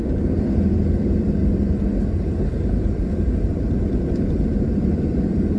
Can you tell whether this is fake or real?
fake